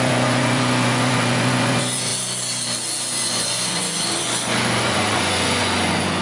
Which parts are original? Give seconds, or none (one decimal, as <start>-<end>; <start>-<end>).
2.1-3.0